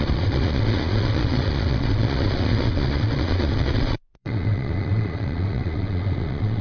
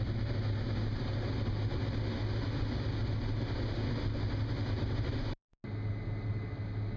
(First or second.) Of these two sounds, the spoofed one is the first